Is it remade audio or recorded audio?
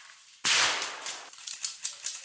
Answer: recorded